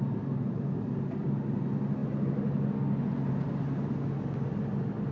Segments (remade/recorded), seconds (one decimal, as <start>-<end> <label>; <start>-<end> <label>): 0.0-5.1 recorded